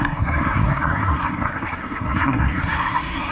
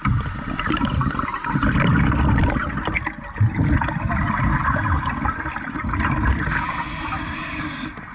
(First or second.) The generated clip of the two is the first